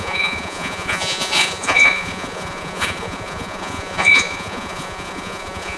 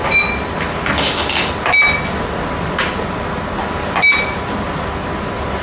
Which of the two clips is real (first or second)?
second